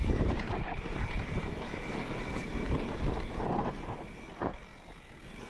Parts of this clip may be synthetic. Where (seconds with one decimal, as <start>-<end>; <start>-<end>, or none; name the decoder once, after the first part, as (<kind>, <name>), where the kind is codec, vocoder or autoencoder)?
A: 0.0-5.5 (vocoder, BigVGAN v2)